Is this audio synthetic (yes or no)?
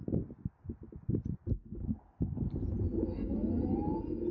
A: no